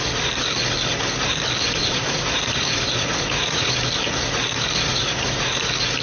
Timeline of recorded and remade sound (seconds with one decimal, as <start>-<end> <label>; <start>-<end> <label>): 0.0-1.8 recorded; 1.8-3.7 remade; 3.7-4.9 recorded; 4.9-5.6 remade; 5.6-6.0 recorded